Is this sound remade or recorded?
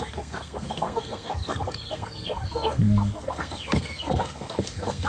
remade